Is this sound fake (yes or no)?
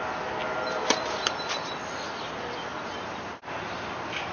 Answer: no